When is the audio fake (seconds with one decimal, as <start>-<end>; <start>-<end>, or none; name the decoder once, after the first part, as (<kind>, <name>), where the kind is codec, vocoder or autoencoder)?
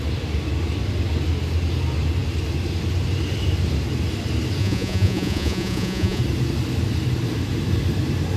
4.6-6.2 (vocoder, Vocos)